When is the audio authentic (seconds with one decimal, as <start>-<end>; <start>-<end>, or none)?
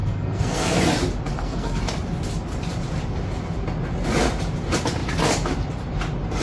0.8-1.3; 1.8-6.4